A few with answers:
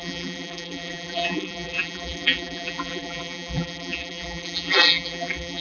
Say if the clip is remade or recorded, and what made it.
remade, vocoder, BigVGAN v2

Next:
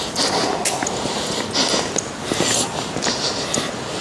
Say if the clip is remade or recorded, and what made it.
recorded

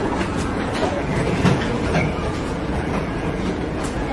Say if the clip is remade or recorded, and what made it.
remade, vocoder, Vocos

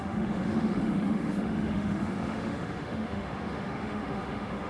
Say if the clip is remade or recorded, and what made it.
remade, autoencoder, DAC-VAE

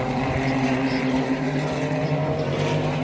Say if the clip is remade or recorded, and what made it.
remade, vocoder, BigVGAN v2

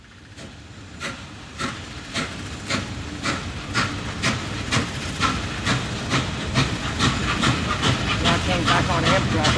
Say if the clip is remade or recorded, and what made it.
recorded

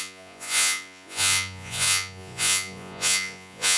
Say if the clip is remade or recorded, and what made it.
remade, vocoder, Vocos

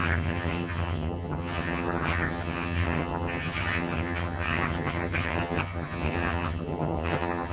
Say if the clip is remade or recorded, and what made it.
remade, vocoder, HiFi-GAN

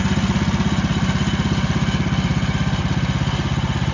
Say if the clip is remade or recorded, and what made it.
recorded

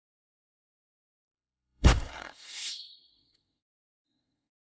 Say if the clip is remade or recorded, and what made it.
remade, codec, SNAC